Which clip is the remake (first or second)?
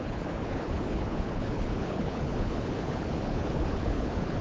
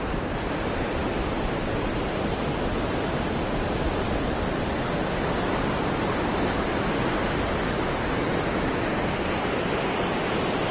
first